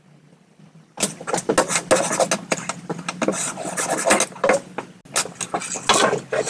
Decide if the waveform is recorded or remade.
recorded